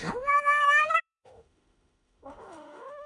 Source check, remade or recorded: remade